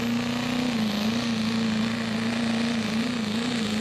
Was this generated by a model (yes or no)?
no